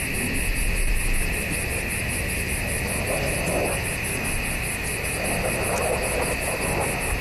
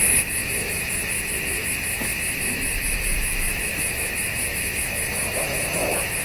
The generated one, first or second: second